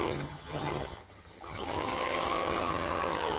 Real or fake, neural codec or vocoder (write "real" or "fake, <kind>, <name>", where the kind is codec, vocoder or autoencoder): fake, vocoder, HiFi-GAN